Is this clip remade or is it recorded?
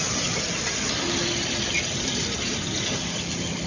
remade